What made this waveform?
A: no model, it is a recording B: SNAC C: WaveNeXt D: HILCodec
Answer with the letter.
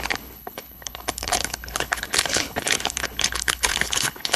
D